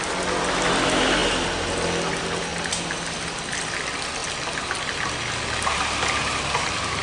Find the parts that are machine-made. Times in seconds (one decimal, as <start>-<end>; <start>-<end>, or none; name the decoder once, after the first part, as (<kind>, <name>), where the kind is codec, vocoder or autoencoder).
none